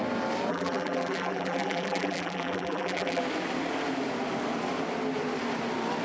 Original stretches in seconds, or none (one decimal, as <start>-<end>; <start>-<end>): 0.0-0.5; 3.2-6.0